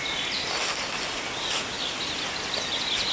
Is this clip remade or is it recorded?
recorded